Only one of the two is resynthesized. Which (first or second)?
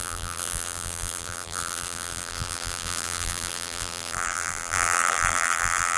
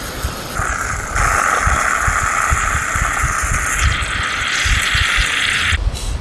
first